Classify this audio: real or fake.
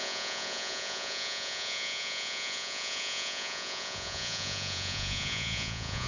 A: fake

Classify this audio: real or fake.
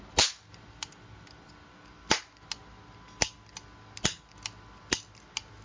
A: real